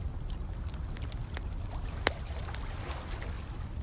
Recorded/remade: recorded